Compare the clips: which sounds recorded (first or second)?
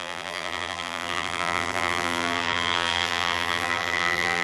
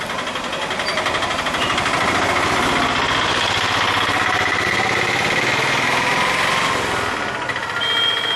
second